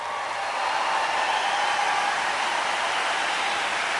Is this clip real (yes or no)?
yes